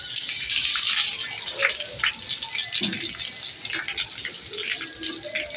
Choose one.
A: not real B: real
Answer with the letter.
B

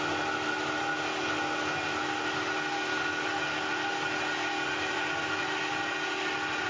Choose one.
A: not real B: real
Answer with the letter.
B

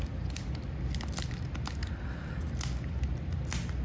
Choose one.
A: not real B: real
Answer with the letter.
B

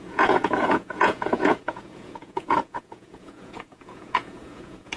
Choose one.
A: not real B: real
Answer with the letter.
A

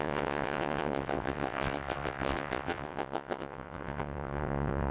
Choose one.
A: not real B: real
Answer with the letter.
A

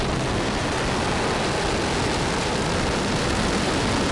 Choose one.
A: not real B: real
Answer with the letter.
B